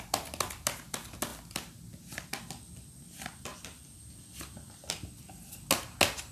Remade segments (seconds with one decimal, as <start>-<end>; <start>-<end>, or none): 3.5-5.1